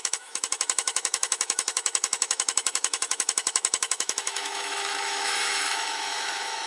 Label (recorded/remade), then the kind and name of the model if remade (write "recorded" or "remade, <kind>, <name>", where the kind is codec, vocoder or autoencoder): remade, autoencoder, DAC-VAE